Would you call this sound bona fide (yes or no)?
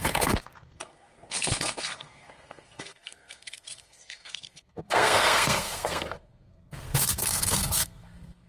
no